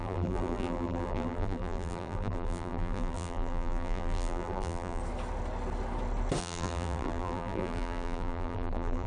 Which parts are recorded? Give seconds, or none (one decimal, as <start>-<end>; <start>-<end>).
5.0-6.4